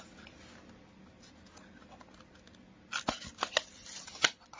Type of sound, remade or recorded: recorded